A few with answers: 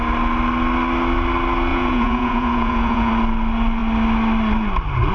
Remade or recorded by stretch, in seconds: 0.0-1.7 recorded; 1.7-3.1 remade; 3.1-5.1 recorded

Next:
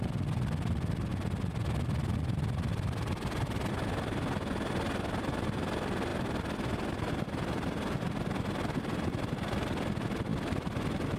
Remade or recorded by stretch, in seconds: 0.0-11.2 recorded

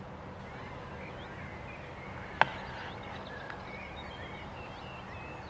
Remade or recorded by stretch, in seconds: 0.0-5.5 recorded